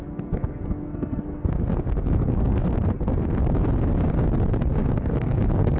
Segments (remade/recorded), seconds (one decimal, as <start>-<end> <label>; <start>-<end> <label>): 0.0-3.5 remade; 3.5-4.8 recorded; 4.8-5.8 remade